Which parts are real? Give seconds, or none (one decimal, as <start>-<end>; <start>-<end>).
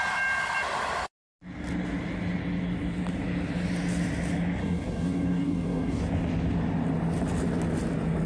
0.0-4.6; 6.0-8.3